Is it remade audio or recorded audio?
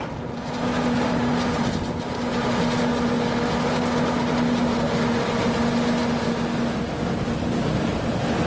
recorded